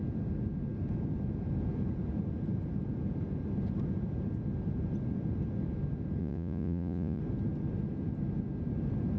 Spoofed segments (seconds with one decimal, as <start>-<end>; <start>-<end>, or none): 6.2-7.2